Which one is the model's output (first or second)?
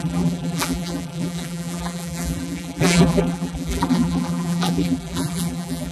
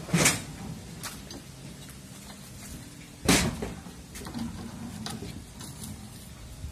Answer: first